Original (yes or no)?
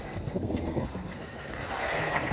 no